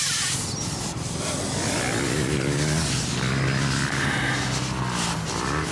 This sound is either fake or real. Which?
real